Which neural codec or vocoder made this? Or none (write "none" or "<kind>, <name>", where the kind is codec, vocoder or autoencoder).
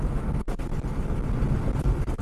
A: none